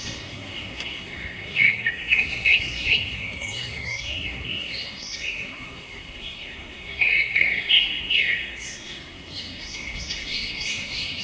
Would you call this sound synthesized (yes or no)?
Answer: yes